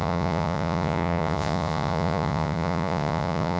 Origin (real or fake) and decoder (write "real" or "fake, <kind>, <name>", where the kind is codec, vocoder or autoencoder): fake, vocoder, Vocos